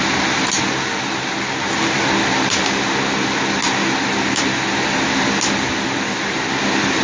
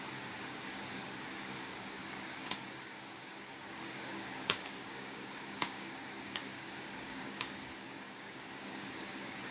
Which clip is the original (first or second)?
first